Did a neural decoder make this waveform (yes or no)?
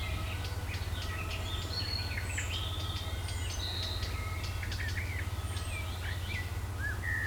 no